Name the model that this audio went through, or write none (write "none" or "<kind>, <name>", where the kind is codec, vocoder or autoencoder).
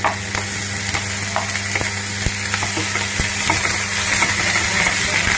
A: none